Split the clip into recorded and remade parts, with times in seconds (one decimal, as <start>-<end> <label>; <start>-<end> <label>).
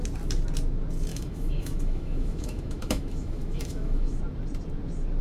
0.0-1.1 recorded; 1.1-4.2 remade; 4.2-5.2 recorded